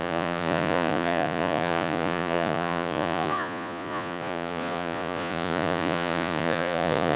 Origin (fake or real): fake